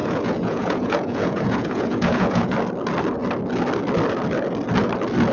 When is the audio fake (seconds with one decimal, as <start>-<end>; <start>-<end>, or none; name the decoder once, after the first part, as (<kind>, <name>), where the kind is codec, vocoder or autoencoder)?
0.0-2.5 (vocoder, Vocos)